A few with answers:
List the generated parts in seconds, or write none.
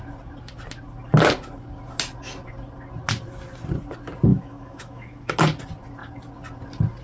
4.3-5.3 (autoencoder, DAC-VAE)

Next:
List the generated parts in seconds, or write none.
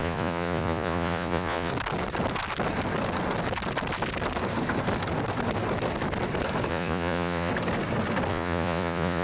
0.0-1.7 (vocoder, Vocos); 6.7-7.5; 8.3-9.2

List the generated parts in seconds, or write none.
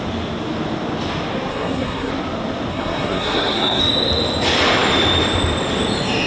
1.5-2.1 (codec, SNAC); 2.7-3.8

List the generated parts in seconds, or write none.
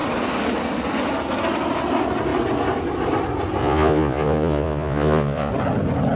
3.6-5.5 (vocoder, Vocos)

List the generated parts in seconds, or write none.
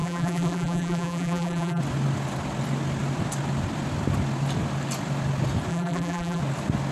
0.0-1.8 (vocoder, BigVGAN v2); 5.7-6.4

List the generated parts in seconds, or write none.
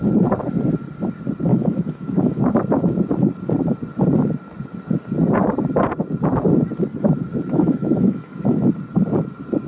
1.5-2.4 (autoencoder, DAC-VAE); 7.5-8.6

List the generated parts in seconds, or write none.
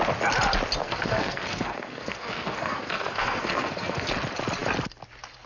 0.8-4.1 (codec, SNAC)